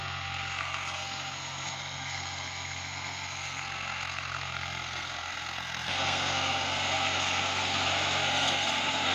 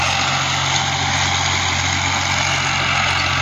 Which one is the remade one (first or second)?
first